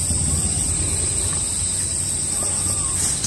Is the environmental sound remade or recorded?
recorded